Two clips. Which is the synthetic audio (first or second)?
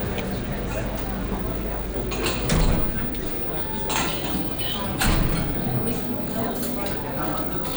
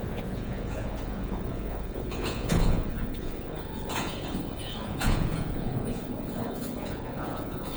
second